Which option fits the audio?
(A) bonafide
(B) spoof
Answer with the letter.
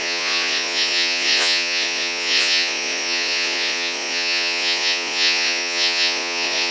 B